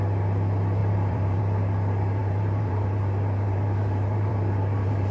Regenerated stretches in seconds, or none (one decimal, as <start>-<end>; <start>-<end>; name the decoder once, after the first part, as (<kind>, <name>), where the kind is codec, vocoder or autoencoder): 0.8-1.4 (vocoder, BigVGAN v2); 2.2-5.1